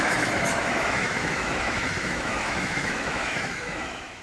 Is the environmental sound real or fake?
fake